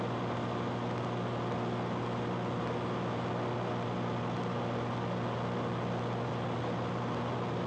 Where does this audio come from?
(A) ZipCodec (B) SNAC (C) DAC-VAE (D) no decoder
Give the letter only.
D